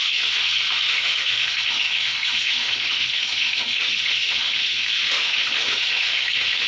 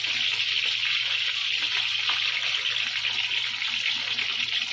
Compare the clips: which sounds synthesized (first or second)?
first